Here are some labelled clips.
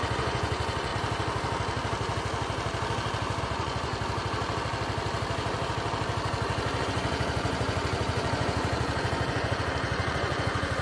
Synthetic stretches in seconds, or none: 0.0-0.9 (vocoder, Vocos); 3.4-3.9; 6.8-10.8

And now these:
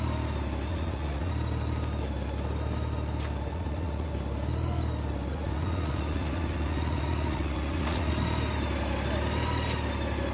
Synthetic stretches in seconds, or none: 0.7-1.3 (vocoder, Vocos); 3.5-4.1; 5.3-8.1

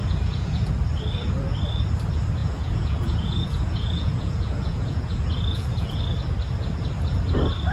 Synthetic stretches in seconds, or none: 0.0-0.7 (vocoder, Vocos); 2.4-6.0